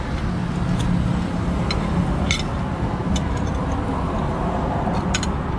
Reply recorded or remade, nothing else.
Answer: recorded